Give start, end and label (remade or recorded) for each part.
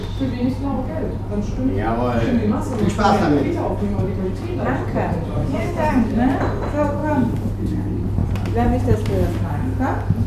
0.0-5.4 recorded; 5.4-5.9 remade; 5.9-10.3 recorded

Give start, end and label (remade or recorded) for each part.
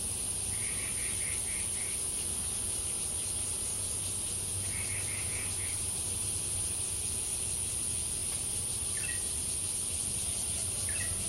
0.0-11.3 recorded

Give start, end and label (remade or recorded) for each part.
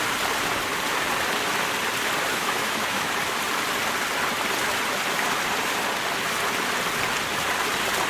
0.0-2.3 recorded; 2.3-3.2 remade; 3.2-8.1 recorded